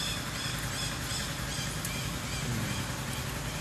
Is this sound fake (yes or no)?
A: no